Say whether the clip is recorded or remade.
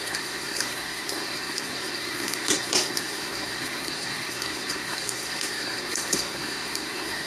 remade